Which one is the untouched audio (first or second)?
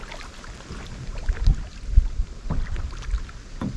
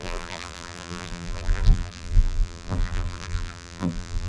first